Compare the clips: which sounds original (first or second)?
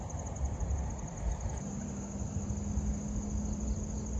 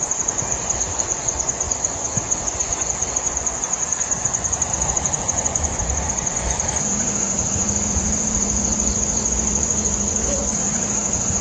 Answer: first